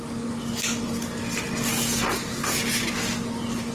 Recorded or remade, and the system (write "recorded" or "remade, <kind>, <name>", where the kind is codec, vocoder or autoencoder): recorded